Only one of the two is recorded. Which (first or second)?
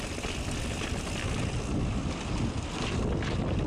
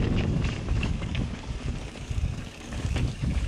first